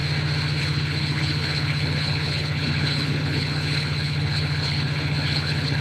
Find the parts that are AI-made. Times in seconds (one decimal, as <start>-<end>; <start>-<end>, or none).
0.6-5.8